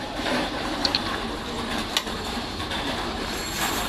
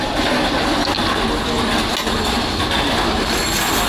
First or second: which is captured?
second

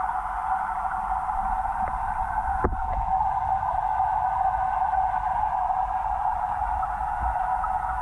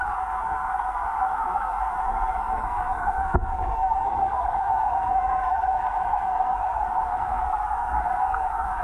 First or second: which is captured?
first